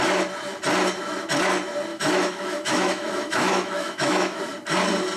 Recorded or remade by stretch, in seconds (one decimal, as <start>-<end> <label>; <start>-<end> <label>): 0.0-1.9 recorded; 1.9-4.4 remade; 4.4-5.2 recorded